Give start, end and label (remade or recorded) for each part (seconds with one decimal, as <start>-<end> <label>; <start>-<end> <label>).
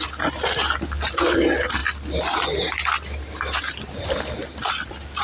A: 0.0-5.2 recorded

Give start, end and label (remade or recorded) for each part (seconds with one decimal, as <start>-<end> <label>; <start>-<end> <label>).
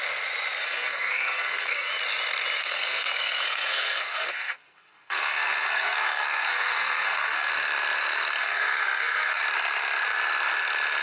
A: 0.0-0.6 recorded; 0.6-1.9 remade; 1.9-2.6 recorded; 2.6-7.5 remade; 7.5-8.4 recorded; 8.4-9.4 remade; 9.4-11.0 recorded